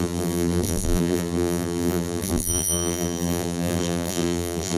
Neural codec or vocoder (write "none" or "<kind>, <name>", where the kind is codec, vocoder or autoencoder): vocoder, BigVGAN v2